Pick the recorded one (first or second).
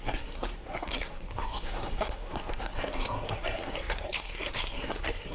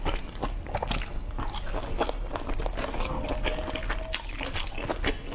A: second